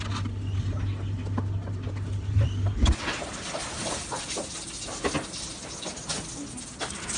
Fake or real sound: real